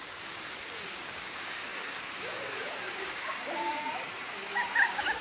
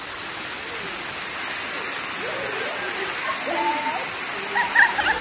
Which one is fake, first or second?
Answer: first